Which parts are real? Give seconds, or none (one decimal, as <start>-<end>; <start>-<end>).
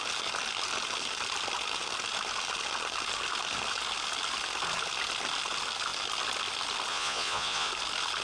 0.0-6.9; 7.7-8.2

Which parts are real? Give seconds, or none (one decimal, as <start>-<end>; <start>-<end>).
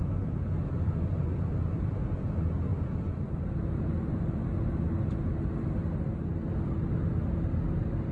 0.0-8.1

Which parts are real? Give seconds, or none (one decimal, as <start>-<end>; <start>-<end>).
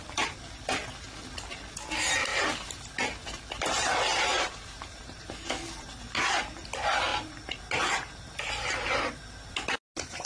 0.0-4.3; 5.2-7.1; 7.6-10.3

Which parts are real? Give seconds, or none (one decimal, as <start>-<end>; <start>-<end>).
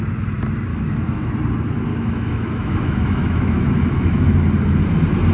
0.0-0.7; 1.3-1.9; 4.4-5.3